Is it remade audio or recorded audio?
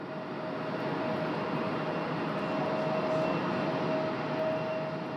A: recorded